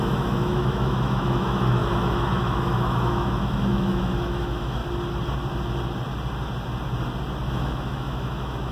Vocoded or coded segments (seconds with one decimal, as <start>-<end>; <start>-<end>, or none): 0.0-4.8; 7.5-8.7